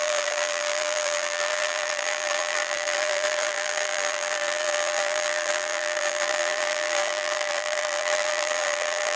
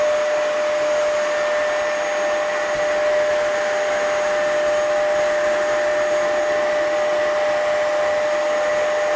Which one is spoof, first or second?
first